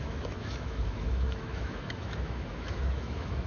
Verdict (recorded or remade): remade